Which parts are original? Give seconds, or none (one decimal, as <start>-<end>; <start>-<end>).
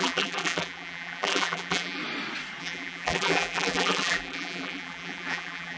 2.0-2.6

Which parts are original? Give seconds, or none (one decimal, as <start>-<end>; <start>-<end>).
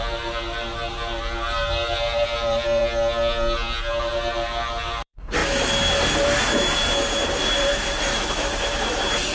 2.8-4.0; 5.4-7.3; 7.7-8.6